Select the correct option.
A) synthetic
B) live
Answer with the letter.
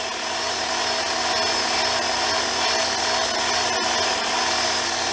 B